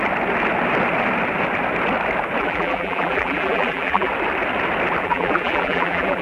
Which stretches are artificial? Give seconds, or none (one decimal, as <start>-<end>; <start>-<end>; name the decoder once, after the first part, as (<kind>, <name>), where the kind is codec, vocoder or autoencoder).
2.4-4.1 (vocoder, BigVGAN v2); 5.0-6.2